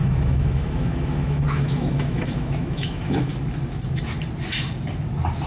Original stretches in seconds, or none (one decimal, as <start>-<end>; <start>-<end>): 3.3-5.5